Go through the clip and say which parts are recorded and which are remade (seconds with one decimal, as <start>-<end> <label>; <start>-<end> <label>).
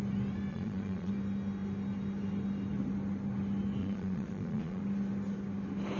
0.0-0.5 recorded; 0.5-1.1 remade; 1.1-3.8 recorded; 3.8-4.8 remade; 4.8-6.0 recorded